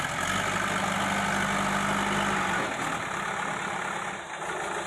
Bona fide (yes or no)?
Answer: yes